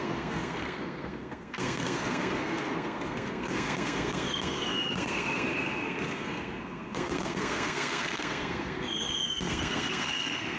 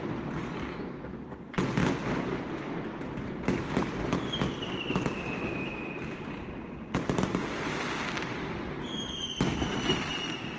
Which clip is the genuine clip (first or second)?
second